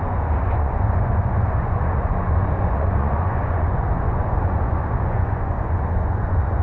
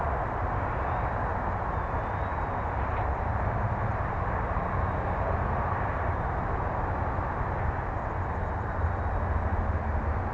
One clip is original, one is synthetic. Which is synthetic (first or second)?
first